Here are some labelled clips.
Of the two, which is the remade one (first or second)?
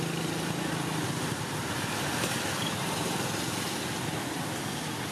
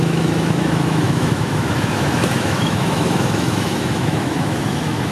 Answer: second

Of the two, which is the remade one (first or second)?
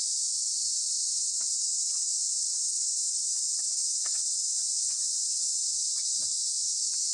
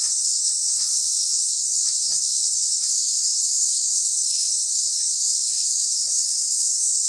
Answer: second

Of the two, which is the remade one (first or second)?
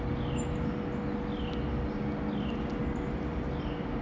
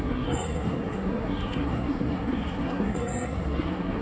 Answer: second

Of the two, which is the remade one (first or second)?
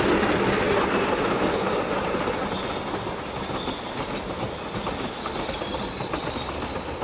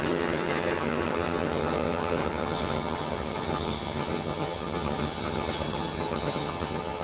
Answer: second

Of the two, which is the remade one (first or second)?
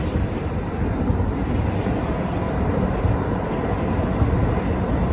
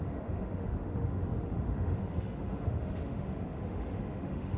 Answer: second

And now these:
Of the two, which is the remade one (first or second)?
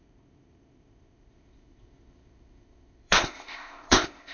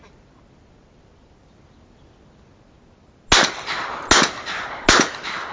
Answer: first